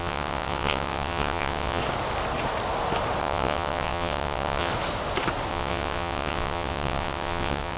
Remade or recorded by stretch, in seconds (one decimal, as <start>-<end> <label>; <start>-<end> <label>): 0.0-1.8 remade; 1.8-3.2 recorded; 3.2-4.7 remade; 4.7-5.5 recorded; 5.5-7.8 remade